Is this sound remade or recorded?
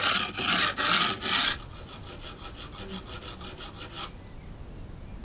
recorded